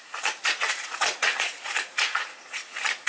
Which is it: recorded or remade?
remade